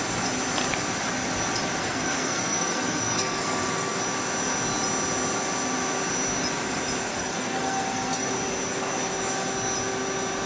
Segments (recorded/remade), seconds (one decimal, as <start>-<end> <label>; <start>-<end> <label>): 0.0-1.8 recorded; 1.8-4.0 remade; 4.0-7.1 recorded; 7.1-8.3 remade; 8.3-10.5 recorded